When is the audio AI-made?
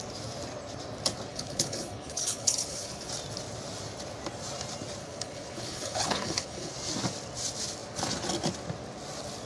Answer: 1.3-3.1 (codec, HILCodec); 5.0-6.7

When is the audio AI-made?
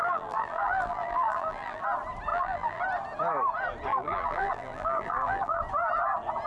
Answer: 0.0-1.8 (vocoder, BigVGAN v2); 2.3-2.8; 3.9-5.6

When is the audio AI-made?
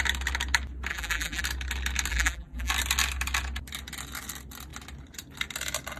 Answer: 0.9-1.4 (vocoder, BigVGAN v2); 2.1-2.7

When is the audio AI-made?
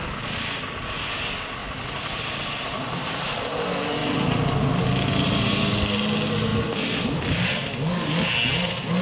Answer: 1.6-3.3 (vocoder, BigVGAN v2); 4.0-4.5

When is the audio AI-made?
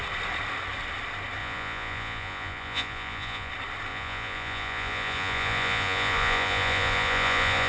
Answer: 1.4-3.5 (vocoder, Vocos); 3.9-7.7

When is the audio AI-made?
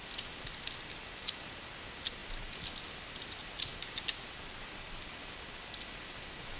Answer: none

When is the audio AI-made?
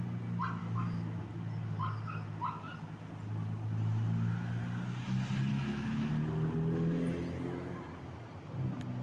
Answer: 0.6-1.2 (autoencoder, DAC-VAE); 5.5-6.1